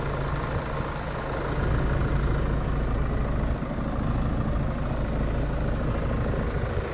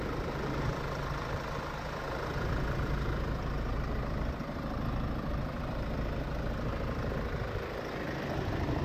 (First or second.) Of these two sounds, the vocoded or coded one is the second